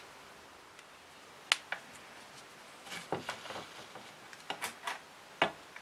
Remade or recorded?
recorded